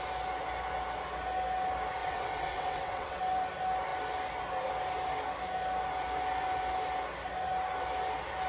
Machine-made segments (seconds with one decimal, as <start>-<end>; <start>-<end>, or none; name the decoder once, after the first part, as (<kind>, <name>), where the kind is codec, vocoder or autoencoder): 2.0-3.2 (vocoder, WaveNeXt)